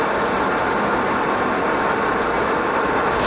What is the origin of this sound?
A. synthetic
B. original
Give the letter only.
B